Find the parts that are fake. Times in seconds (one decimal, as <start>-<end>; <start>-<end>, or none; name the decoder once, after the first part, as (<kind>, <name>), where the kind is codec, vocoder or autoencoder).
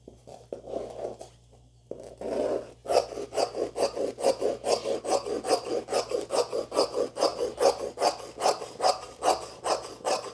none